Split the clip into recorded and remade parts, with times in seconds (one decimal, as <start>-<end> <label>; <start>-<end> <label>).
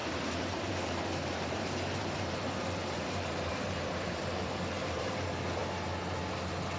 0.0-5.6 remade; 5.6-6.8 recorded